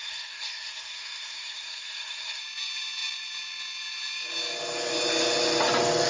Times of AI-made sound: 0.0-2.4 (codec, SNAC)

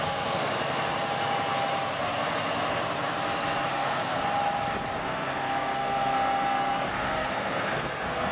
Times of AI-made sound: 0.0-0.6 (codec, SNAC); 3.7-4.2; 5.0-8.3

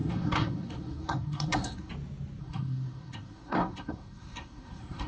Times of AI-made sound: 0.0-1.9 (codec, SNAC); 2.4-5.1

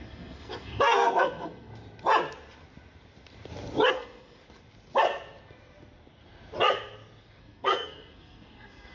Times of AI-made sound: 0.0-1.7 (codec, SNAC); 3.9-4.4; 7.4-8.9